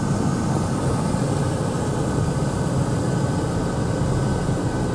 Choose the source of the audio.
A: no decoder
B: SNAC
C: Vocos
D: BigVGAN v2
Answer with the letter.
A